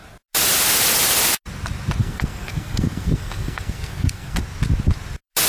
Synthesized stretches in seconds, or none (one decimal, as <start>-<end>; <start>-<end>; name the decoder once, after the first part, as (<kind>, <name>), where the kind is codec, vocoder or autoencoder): 2.0-4.4 (codec, SNAC)